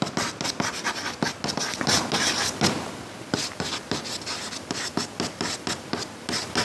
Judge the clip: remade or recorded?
recorded